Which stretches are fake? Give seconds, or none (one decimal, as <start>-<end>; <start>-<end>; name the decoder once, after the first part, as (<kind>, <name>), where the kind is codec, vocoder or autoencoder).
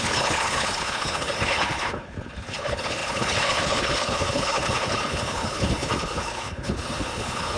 0.0-7.6 (codec, HILCodec)